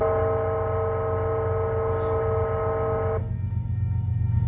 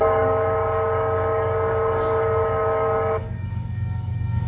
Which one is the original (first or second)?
first